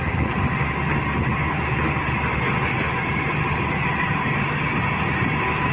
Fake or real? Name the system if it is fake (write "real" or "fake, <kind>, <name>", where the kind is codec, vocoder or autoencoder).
real